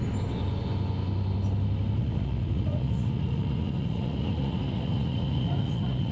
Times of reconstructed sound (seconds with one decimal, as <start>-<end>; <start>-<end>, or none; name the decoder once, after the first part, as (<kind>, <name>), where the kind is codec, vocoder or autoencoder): 2.0-6.1 (vocoder, Vocos)

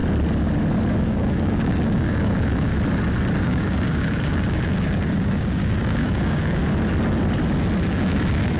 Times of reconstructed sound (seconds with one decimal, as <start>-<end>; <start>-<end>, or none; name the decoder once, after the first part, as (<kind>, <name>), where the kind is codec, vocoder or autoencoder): 1.0-2.7 (codec, DAC); 3.4-6.6; 7.9-8.6

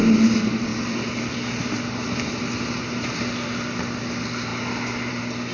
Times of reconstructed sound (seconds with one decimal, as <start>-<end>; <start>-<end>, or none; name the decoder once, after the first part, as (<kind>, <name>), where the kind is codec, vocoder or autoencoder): none

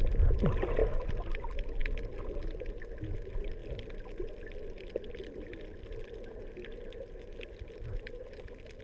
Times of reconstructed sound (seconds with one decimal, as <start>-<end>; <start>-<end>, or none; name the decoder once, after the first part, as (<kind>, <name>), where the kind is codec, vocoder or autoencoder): none

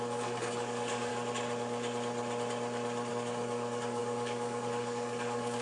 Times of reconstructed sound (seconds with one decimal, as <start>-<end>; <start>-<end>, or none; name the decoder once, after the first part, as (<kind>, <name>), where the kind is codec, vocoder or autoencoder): 0.0-1.1 (codec, DAC); 3.1-5.6

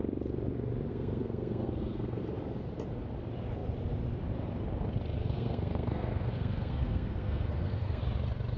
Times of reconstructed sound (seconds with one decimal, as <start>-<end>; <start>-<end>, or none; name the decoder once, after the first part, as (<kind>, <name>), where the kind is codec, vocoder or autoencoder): 0.9-2.2 (codec, SNAC); 5.2-8.0

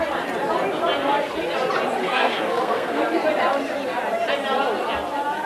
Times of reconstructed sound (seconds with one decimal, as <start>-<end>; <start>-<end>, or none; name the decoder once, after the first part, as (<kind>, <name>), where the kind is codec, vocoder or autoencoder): 2.0-3.0 (codec, SNAC)

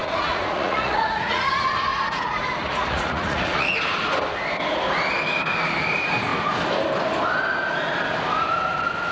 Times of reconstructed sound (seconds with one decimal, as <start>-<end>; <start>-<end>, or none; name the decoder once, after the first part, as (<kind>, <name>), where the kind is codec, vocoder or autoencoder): 0.0-1.5 (vocoder, Vocos); 1.9-3.7